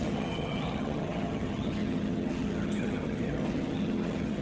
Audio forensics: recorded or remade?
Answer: remade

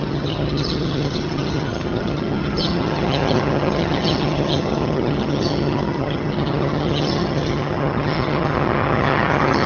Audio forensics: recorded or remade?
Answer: remade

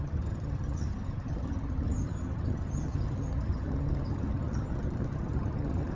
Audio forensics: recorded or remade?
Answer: remade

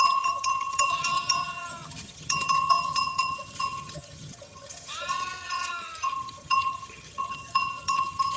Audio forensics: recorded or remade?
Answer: remade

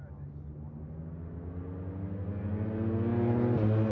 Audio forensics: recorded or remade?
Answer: recorded